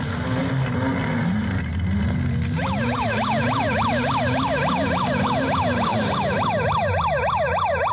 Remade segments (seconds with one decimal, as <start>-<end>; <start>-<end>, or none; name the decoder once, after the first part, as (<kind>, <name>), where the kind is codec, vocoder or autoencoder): 2.6-5.3 (vocoder, BigVGAN v2); 5.9-7.9

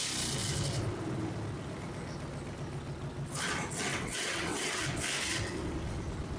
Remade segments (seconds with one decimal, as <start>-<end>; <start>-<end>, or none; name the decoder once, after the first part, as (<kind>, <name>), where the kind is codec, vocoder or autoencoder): 3.9-4.8 (vocoder, WaveNeXt)